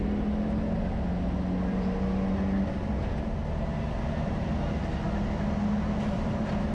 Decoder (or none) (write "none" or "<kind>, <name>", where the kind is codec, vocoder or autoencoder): none